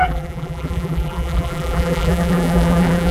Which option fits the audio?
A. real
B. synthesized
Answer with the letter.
B